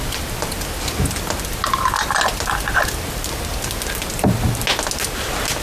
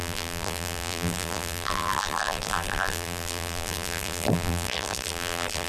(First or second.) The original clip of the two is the first